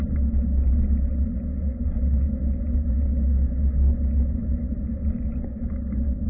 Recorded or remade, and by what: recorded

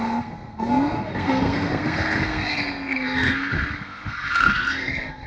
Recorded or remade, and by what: remade, codec, SNAC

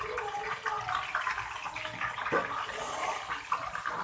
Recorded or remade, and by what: recorded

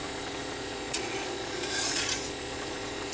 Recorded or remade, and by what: remade, vocoder, Vocos